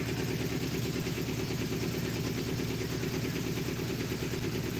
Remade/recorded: recorded